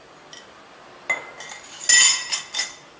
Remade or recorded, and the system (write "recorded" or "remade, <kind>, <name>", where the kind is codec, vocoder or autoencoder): recorded